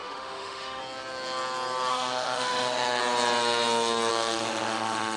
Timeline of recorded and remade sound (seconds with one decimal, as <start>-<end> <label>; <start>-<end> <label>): 0.0-0.8 remade; 0.8-1.9 recorded; 1.9-3.0 remade; 3.0-4.1 recorded; 4.1-5.2 remade